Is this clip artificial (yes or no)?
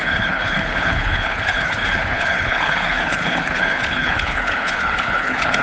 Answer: yes